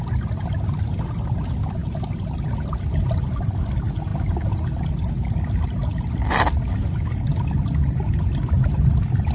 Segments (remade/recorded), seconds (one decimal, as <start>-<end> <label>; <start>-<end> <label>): 0.0-9.3 recorded